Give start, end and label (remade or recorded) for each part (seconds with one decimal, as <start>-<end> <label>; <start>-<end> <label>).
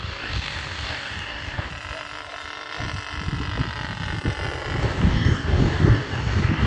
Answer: 0.0-1.7 remade; 1.7-4.8 recorded; 4.8-6.7 remade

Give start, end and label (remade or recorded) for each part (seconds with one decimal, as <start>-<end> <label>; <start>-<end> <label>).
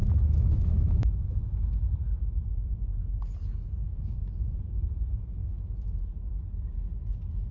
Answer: 0.0-1.9 remade; 1.9-3.8 recorded; 3.8-4.3 remade; 4.3-5.4 recorded; 5.4-6.0 remade; 6.0-7.5 recorded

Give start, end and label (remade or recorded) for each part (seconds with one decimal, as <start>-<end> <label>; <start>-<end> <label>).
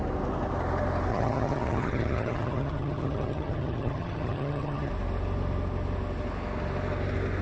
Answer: 0.0-1.1 recorded; 1.1-4.9 remade; 4.9-7.4 recorded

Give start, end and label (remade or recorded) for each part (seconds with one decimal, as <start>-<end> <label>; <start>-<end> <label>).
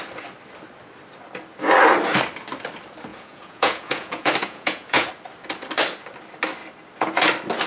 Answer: 0.0-3.1 recorded; 3.1-5.1 remade; 5.1-7.7 recorded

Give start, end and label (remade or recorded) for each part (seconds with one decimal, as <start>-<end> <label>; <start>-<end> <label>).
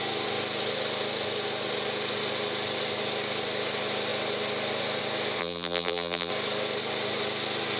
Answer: 0.0-5.4 recorded; 5.4-6.3 remade; 6.3-7.8 recorded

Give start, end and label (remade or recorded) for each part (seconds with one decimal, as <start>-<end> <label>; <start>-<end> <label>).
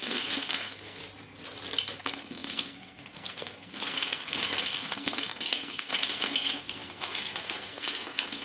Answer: 0.0-1.0 remade; 1.0-2.0 recorded; 2.0-8.4 remade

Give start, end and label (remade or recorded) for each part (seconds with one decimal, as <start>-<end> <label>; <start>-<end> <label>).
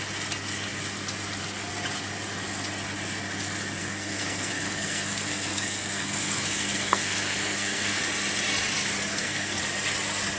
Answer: 0.0-3.8 recorded; 3.8-8.0 remade; 8.0-9.1 recorded; 9.1-9.6 remade; 9.6-10.4 recorded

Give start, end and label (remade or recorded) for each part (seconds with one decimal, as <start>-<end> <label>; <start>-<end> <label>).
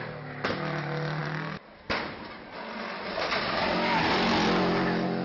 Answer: 0.0-5.2 recorded